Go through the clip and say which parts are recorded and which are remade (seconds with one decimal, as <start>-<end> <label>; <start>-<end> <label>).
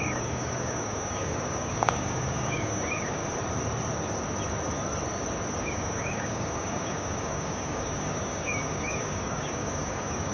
0.0-3.2 remade; 3.2-5.6 recorded; 5.6-10.3 remade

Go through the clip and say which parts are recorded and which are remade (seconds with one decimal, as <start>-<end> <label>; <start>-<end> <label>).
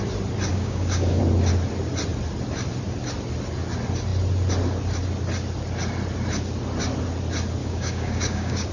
0.0-0.5 recorded; 0.5-1.2 remade; 1.2-7.6 recorded; 7.6-8.7 remade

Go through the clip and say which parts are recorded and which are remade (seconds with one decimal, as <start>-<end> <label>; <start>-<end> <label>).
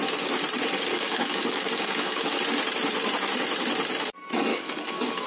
0.0-0.9 recorded; 0.9-2.4 remade; 2.4-4.5 recorded; 4.5-5.3 remade